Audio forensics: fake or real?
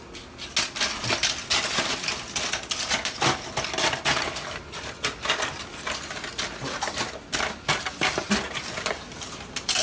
real